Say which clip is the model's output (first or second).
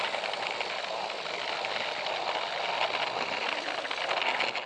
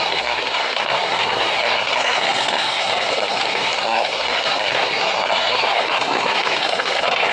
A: second